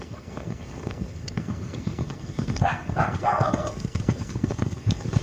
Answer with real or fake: fake